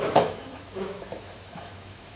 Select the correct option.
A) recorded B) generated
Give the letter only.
B